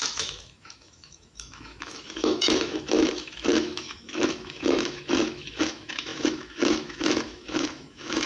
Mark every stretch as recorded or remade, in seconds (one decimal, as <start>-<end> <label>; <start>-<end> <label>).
0.0-8.3 remade